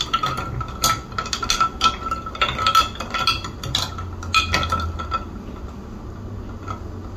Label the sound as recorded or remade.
recorded